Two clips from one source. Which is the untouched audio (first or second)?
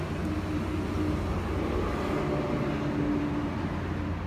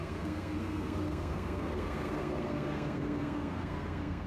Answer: first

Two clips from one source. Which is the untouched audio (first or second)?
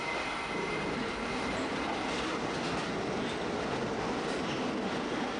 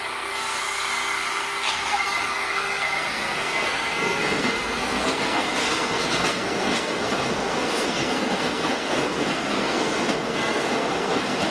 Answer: first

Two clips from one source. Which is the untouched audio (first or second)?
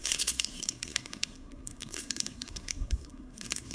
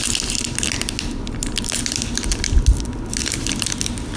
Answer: second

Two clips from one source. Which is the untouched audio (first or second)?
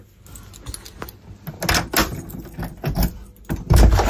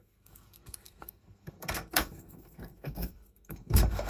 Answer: first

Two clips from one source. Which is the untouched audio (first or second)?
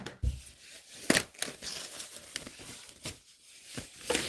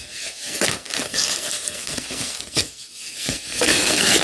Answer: first